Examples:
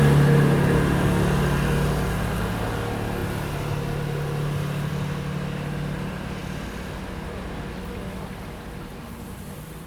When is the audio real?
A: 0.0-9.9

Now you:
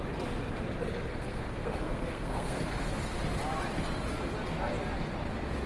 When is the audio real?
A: 0.0-1.1; 2.6-5.7